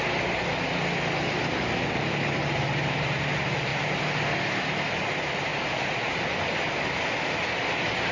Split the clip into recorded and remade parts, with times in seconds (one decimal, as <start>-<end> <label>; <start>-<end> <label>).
0.0-8.1 recorded

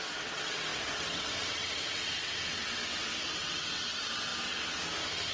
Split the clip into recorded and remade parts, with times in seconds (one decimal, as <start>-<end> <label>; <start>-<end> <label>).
0.0-4.3 remade; 4.3-5.3 recorded

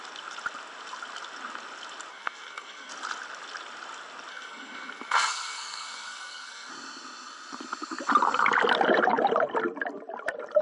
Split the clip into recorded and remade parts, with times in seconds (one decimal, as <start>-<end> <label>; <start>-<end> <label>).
0.0-2.1 recorded; 2.1-2.9 remade; 2.9-4.3 recorded; 4.3-6.7 remade; 6.7-10.6 recorded